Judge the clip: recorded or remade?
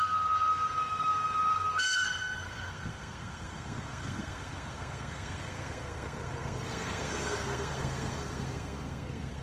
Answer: remade